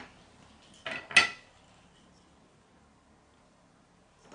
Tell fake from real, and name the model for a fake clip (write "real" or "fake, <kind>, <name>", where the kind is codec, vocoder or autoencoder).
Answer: real